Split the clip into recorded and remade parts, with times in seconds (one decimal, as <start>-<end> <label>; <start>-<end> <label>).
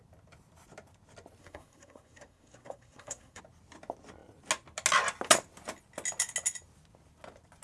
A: 0.0-1.4 recorded; 1.4-3.4 remade; 3.4-7.6 recorded